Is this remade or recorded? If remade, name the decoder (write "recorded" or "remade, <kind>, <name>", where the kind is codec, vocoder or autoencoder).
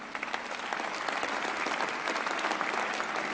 recorded